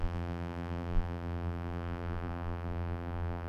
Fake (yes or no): yes